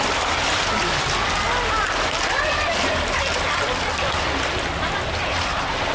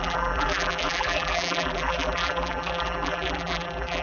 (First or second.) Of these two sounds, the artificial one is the second